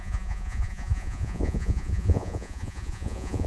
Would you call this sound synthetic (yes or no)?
yes